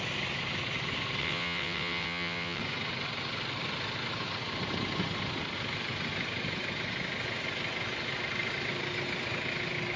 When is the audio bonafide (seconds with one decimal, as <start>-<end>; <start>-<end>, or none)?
0.0-1.2; 2.6-10.0